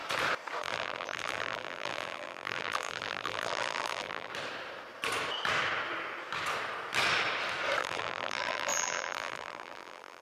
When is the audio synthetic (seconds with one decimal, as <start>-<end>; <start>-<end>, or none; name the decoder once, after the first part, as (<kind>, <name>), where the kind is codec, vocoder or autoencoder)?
0.6-4.3 (vocoder, BigVGAN v2); 7.8-10.2